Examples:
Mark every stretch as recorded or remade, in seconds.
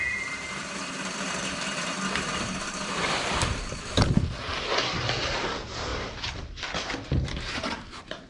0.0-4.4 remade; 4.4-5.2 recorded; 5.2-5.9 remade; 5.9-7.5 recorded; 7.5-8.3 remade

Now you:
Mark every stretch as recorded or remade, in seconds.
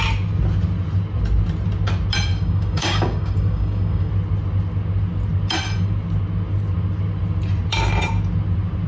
0.0-2.3 recorded; 2.3-4.1 remade; 4.1-8.9 recorded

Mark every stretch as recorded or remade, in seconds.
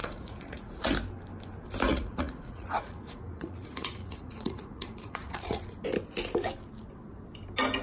0.0-0.9 remade; 0.9-1.9 recorded; 1.9-5.6 remade; 5.6-7.8 recorded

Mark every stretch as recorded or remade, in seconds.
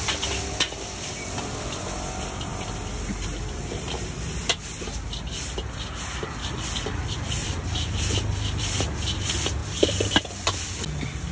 0.0-7.4 recorded; 7.4-8.6 remade; 8.6-9.6 recorded; 9.6-10.2 remade; 10.2-11.3 recorded